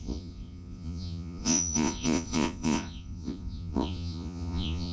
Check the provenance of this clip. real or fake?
fake